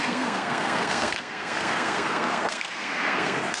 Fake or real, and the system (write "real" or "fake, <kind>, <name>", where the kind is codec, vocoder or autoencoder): fake, codec, SNAC